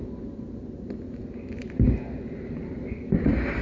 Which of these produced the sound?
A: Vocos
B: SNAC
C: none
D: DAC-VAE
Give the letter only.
C